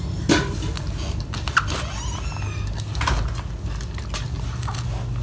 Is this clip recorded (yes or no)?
yes